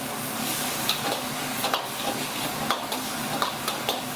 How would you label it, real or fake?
fake